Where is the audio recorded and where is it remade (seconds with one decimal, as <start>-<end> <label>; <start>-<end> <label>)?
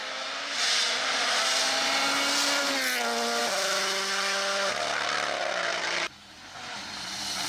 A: 0.0-7.5 recorded